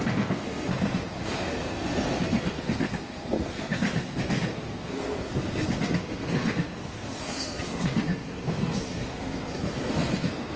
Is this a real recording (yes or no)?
no